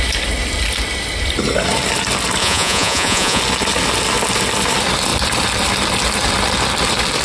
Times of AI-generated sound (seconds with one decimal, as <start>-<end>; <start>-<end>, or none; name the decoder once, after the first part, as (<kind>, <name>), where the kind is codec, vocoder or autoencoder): 2.4-3.4 (vocoder, Vocos)